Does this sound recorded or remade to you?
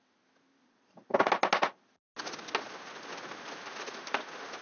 recorded